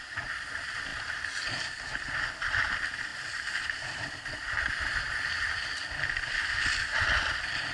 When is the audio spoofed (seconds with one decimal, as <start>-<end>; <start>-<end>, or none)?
none